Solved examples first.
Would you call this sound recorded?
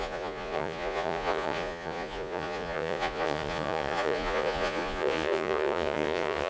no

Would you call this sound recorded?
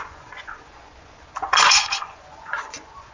no